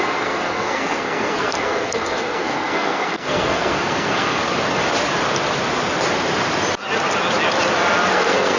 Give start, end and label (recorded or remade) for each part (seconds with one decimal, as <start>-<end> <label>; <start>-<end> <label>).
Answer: 0.0-4.8 remade; 4.8-8.1 recorded; 8.1-8.6 remade